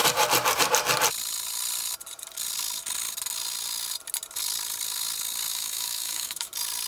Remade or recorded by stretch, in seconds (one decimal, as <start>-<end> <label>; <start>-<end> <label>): 0.0-5.5 recorded; 5.5-6.5 remade; 6.5-6.9 recorded